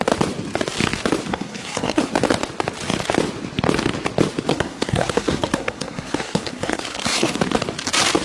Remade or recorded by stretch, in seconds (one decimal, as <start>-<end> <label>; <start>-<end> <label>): 0.0-1.3 recorded; 1.3-2.1 remade; 2.1-4.5 recorded; 4.5-7.4 remade; 7.4-8.2 recorded